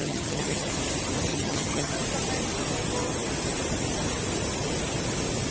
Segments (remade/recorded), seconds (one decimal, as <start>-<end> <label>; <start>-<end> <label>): 0.0-0.7 remade; 0.7-1.3 recorded; 1.3-1.9 remade; 1.9-5.5 recorded